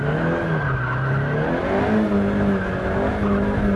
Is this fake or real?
real